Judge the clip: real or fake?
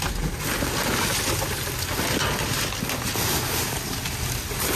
real